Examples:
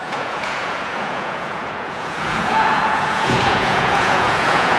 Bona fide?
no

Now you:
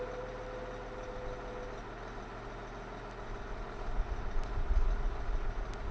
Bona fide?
yes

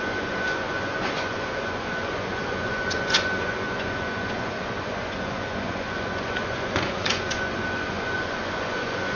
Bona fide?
no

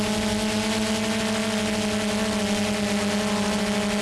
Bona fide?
yes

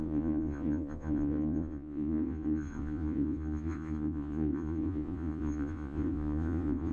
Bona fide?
no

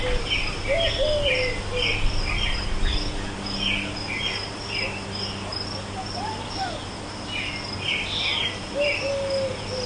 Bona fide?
yes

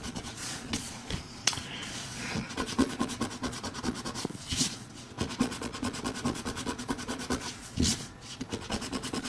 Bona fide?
no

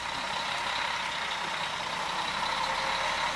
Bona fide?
yes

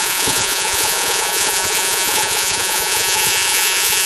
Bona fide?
no